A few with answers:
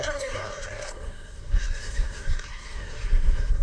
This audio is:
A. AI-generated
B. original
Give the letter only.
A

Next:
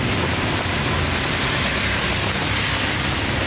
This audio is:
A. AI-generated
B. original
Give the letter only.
B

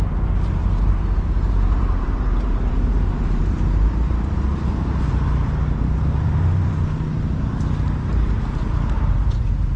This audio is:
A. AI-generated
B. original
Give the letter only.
A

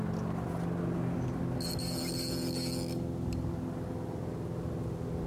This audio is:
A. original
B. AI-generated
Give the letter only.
A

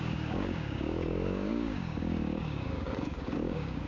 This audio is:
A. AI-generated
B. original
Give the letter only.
A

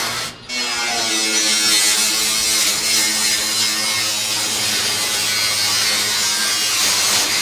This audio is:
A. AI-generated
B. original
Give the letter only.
B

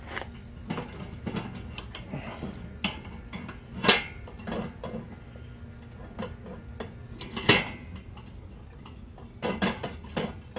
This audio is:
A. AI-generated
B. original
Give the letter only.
B